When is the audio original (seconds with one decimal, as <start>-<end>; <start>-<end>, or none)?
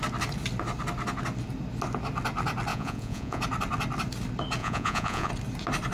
0.0-2.7; 3.4-4.6; 5.3-5.9